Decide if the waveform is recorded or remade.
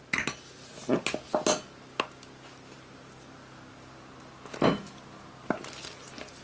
recorded